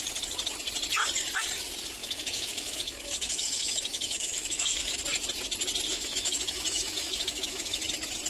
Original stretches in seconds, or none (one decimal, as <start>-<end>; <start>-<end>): 0.0-2.0; 5.0-5.9; 7.8-8.3